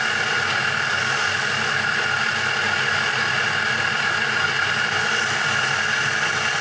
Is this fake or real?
real